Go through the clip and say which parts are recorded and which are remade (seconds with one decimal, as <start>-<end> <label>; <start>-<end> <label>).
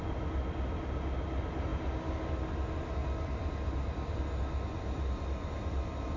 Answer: 0.0-6.2 recorded